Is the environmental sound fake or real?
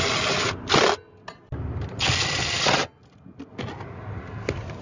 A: real